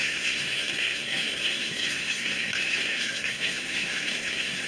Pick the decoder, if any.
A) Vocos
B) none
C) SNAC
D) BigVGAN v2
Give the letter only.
C